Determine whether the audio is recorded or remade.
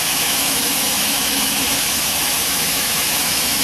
remade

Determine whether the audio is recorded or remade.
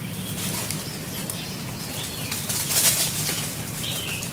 recorded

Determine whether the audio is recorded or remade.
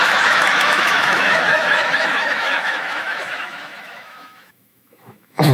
remade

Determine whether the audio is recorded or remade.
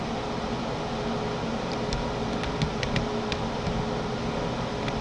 recorded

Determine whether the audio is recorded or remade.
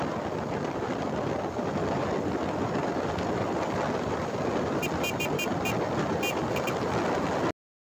recorded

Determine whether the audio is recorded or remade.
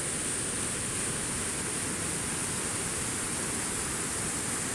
recorded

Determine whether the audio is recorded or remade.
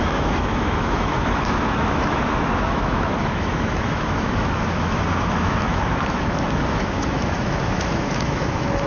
remade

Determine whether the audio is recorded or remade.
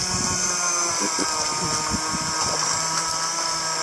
recorded